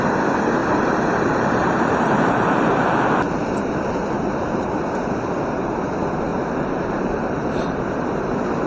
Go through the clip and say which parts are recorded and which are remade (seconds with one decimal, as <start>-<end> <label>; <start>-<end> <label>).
0.0-0.6 recorded; 0.6-4.7 remade; 4.7-6.3 recorded; 6.3-7.8 remade; 7.8-8.7 recorded